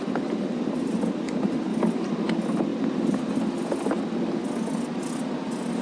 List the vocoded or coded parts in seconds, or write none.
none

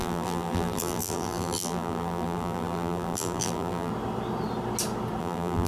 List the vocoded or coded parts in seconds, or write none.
0.0-3.9 (vocoder, BigVGAN v2); 5.2-5.7

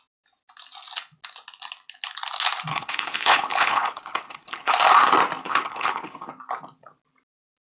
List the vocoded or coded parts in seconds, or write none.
2.7-4.7 (codec, HILCodec); 5.4-6.3

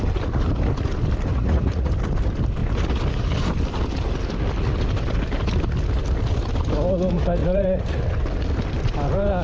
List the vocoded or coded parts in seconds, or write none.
1.3-1.9 (vocoder, Vocos); 7.4-8.0

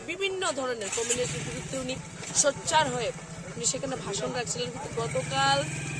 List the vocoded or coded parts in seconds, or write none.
none

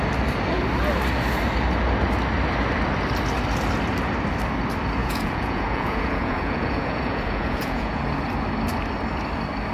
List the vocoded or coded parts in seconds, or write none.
5.0-8.0 (vocoder, Vocos)

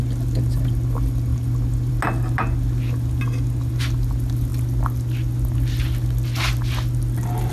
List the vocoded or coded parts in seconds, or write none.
none